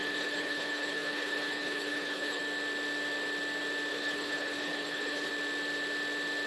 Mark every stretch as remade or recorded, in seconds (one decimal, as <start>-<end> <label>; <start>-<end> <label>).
0.0-2.4 remade; 2.4-3.9 recorded; 3.9-5.3 remade; 5.3-6.5 recorded

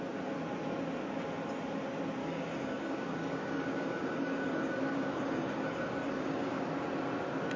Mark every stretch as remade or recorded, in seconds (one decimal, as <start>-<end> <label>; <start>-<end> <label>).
0.0-2.2 recorded; 2.2-6.7 remade; 6.7-7.6 recorded

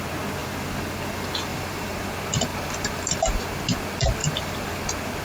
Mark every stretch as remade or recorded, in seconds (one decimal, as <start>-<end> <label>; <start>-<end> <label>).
0.0-1.5 recorded; 1.5-2.1 remade; 2.1-2.5 recorded; 2.5-3.4 remade; 3.4-4.2 recorded; 4.2-4.7 remade; 4.7-5.2 recorded

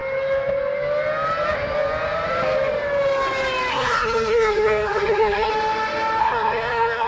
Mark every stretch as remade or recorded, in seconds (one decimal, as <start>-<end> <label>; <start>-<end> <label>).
0.0-3.7 recorded; 3.7-5.5 remade; 5.5-6.2 recorded; 6.2-7.1 remade